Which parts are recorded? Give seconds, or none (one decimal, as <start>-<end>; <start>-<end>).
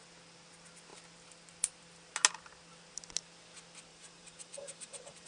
0.0-3.9